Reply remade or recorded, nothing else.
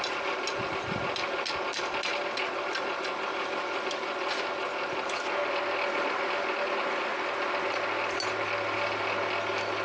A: recorded